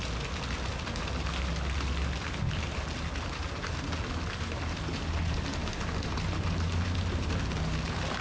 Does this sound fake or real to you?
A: real